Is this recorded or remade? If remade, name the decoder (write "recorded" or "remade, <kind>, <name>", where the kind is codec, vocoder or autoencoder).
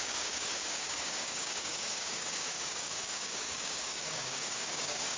remade, codec, DAC